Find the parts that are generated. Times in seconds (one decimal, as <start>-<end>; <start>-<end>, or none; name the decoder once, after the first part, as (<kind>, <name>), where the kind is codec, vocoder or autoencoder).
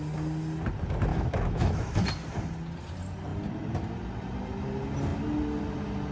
1.1-2.0 (autoencoder, DAC-VAE)